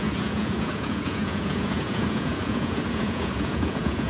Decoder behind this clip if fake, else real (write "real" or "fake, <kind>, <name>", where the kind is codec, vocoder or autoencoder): fake, vocoder, Vocos